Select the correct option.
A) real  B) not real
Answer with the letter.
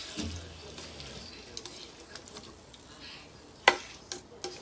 A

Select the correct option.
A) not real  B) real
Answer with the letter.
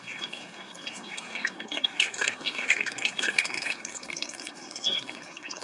A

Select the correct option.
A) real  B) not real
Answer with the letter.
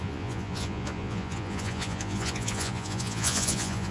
B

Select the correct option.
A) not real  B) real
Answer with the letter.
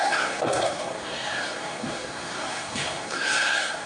A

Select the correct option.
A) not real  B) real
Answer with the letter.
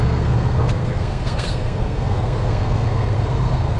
A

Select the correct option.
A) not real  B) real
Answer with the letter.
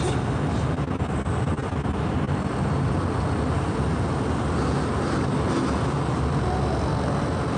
B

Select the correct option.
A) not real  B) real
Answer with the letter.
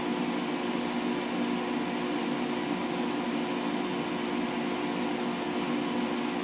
B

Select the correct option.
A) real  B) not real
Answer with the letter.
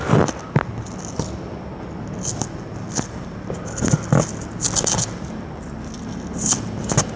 A